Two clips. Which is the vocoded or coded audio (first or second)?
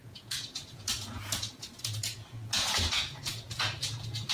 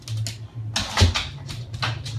first